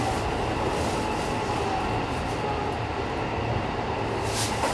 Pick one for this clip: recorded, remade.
recorded